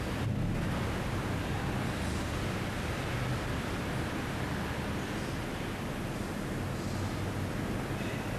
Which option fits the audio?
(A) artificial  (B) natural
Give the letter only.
B